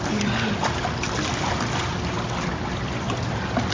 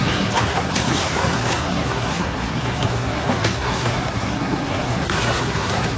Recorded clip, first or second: first